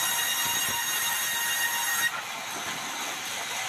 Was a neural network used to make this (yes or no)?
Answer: no